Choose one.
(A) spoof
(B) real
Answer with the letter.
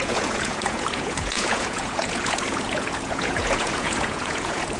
A